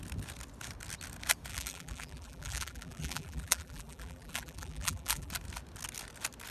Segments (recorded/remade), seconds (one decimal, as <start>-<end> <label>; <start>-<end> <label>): 0.0-1.5 recorded; 1.5-5.3 remade; 5.3-6.5 recorded